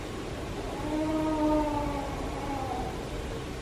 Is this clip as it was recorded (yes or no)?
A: yes